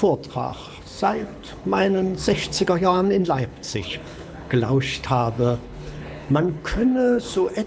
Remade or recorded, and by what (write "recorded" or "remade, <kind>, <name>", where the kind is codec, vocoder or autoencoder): remade, codec, HILCodec